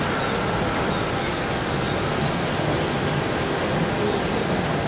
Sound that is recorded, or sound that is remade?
recorded